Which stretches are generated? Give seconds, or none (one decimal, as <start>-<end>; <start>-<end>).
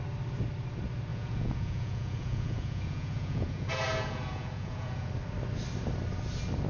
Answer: 1.1-5.1